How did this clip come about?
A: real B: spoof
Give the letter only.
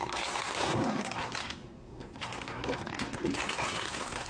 B